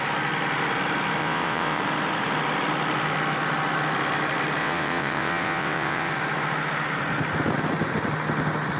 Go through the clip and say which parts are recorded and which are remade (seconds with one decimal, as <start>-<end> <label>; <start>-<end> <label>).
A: 0.0-1.2 recorded; 1.2-1.8 remade; 1.8-4.6 recorded; 4.6-6.1 remade; 6.1-8.8 recorded